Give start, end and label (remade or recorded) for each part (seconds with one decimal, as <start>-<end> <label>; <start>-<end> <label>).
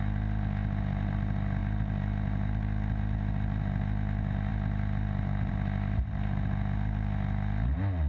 0.0-8.1 recorded